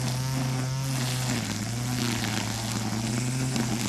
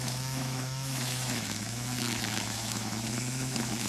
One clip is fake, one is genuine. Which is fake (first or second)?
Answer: second